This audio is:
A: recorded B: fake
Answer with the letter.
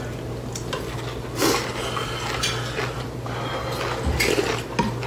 A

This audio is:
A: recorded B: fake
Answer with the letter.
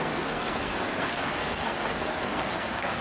B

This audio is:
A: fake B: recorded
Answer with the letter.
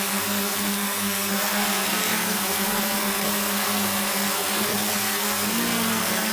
A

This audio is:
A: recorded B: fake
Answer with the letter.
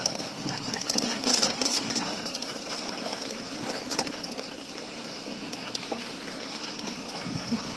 B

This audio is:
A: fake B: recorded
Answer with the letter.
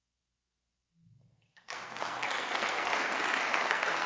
A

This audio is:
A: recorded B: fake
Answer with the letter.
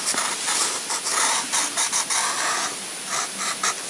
A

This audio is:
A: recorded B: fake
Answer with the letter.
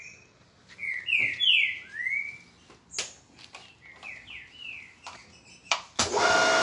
A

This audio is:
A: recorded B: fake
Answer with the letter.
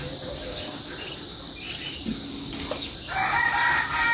A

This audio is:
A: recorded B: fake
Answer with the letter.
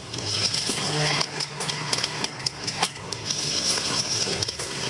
B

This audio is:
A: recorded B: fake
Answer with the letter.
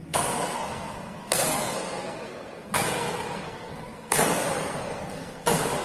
B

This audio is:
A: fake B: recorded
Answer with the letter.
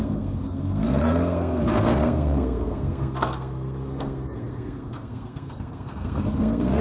A